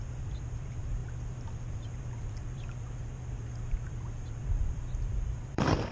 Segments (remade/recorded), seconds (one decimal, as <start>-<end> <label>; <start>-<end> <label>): 0.0-5.9 remade